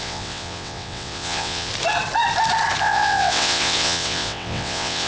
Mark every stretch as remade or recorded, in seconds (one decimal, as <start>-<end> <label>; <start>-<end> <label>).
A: 0.0-1.7 remade; 1.7-2.8 recorded; 2.8-5.1 remade